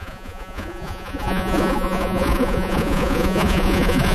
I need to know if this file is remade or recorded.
remade